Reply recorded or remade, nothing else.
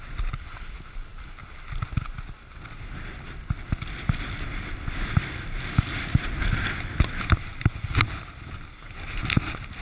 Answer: recorded